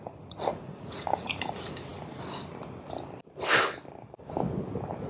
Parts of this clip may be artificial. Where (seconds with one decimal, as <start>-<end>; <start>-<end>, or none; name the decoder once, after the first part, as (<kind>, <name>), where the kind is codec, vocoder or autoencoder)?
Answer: 0.0-1.4 (vocoder, Vocos)